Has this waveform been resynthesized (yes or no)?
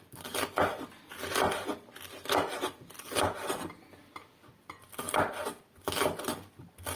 no